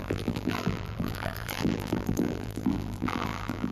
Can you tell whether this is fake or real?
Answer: fake